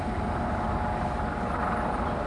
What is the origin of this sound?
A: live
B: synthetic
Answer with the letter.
A